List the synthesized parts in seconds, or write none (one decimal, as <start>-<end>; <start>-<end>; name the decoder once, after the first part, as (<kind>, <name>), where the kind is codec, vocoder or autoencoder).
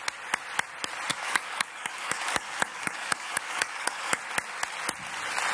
1.1-4.2 (codec, DAC)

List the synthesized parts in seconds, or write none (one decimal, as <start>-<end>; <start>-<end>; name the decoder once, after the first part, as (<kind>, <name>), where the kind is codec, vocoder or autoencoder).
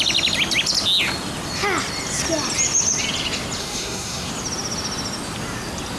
3.6-4.3 (codec, SNAC)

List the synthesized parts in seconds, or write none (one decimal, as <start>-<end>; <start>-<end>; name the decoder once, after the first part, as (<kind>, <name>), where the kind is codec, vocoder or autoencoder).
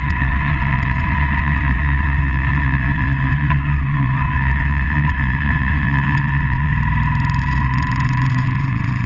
0.0-6.7 (vocoder, WaveNeXt); 7.4-9.1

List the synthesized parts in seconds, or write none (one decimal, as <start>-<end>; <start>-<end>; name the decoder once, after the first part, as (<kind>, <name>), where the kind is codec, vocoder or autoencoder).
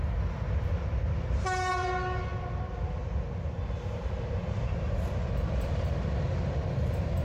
none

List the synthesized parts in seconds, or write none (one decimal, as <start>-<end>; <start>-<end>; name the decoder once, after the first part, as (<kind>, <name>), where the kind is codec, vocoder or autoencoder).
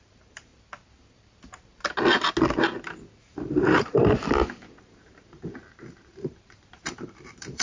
0.0-0.5 (vocoder, BigVGAN v2); 3.2-4.0; 4.8-7.6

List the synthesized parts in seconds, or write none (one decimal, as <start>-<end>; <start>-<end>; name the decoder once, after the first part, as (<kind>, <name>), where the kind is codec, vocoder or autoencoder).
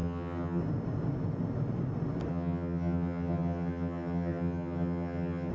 0.0-0.6 (vocoder, HiFi-GAN); 2.3-5.5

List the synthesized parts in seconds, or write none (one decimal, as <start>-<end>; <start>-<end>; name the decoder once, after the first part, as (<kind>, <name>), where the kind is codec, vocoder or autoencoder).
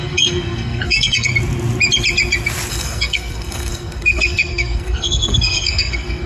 0.0-1.3 (codec, SNAC); 2.7-6.3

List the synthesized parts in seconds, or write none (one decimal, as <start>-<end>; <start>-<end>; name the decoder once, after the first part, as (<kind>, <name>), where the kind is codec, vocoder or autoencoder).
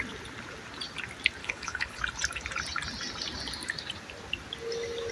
1.4-2.0 (codec, HILCodec)